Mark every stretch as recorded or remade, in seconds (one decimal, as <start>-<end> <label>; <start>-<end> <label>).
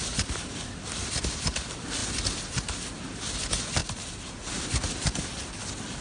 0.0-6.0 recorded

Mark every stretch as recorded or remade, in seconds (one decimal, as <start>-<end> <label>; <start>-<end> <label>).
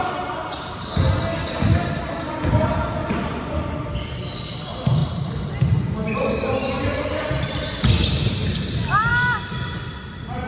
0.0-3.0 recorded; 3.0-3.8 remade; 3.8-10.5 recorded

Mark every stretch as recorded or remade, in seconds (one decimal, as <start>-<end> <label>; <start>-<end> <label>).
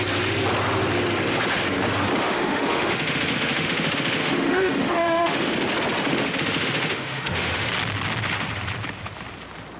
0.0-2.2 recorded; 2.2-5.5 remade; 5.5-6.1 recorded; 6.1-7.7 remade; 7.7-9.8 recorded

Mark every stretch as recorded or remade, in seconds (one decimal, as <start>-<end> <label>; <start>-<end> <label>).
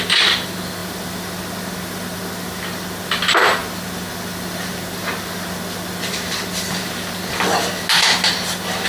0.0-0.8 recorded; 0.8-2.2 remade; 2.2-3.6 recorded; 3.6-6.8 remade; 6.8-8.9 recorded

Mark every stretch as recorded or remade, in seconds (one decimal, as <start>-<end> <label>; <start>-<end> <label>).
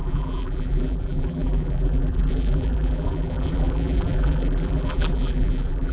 0.0-5.9 remade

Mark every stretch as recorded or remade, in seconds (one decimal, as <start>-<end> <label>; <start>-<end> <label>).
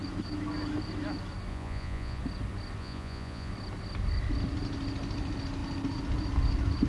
0.0-1.5 recorded; 1.5-2.2 remade; 2.2-2.8 recorded; 2.8-3.5 remade; 3.5-6.9 recorded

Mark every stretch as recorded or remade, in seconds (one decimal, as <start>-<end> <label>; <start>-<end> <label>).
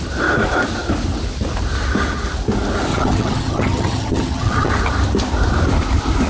0.0-2.9 recorded; 2.9-4.7 remade; 4.7-6.3 recorded